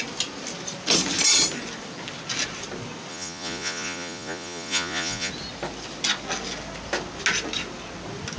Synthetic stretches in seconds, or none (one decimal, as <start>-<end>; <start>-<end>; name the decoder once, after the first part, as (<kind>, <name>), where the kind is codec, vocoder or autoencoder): 3.1-5.3 (vocoder, Vocos)